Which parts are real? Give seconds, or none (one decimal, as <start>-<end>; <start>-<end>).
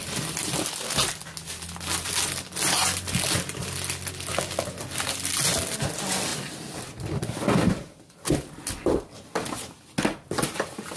0.0-11.0